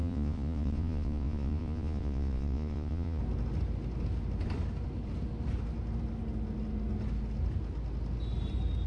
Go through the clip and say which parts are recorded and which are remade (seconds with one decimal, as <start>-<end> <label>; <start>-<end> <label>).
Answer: 0.0-3.2 remade; 3.2-8.9 recorded

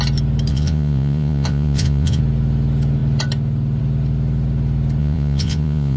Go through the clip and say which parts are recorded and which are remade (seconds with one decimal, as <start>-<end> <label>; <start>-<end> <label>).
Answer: 0.0-0.5 recorded; 0.5-2.2 remade; 2.2-5.0 recorded; 5.0-6.0 remade

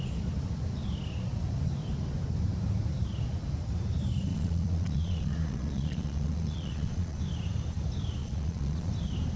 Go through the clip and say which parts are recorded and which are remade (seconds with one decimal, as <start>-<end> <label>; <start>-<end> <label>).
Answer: 0.0-4.3 recorded; 4.3-7.2 remade; 7.2-8.2 recorded; 8.2-8.9 remade; 8.9-9.4 recorded

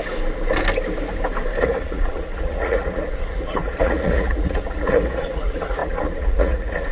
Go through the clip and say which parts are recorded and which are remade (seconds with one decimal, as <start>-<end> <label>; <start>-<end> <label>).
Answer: 0.0-1.6 recorded; 1.6-6.9 remade

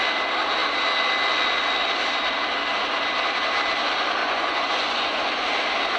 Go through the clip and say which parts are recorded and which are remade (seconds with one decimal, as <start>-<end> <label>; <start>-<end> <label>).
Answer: 0.0-4.2 recorded; 4.2-5.2 remade; 5.2-6.0 recorded

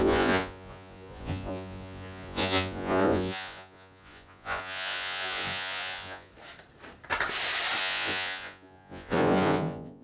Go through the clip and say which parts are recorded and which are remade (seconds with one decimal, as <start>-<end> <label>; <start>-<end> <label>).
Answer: 0.0-6.3 remade; 6.3-7.8 recorded; 7.8-10.0 remade

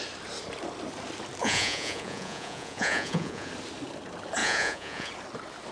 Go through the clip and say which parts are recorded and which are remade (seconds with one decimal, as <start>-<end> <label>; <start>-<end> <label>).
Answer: 0.0-1.4 recorded; 1.4-3.5 remade; 3.5-4.4 recorded; 4.4-5.1 remade; 5.1-5.7 recorded